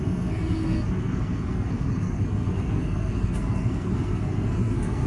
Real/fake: fake